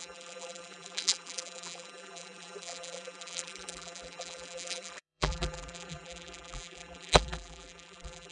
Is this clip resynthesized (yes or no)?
yes